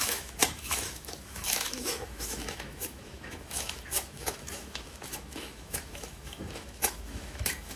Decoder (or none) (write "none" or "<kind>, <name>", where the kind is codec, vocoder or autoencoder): autoencoder, DAC-VAE